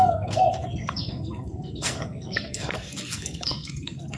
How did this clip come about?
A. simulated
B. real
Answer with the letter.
A